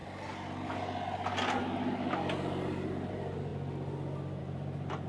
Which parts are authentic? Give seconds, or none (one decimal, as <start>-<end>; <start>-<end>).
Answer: 0.0-3.1; 3.5-4.4